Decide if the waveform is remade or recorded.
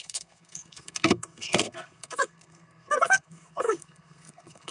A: remade